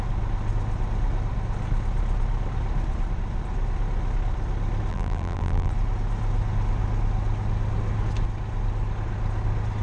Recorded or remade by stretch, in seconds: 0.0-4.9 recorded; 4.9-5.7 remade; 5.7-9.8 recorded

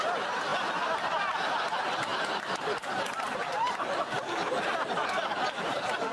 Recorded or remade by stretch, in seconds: 0.0-2.1 recorded; 2.1-4.6 remade; 4.6-6.1 recorded